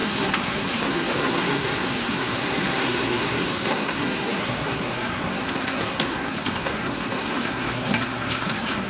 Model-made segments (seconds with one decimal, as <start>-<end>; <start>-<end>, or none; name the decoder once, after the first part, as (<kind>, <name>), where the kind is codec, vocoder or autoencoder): 0.0-8.9 (codec, SNAC)